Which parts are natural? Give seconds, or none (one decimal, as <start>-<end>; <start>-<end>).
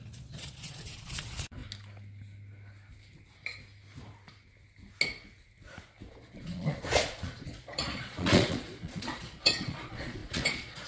1.6-6.1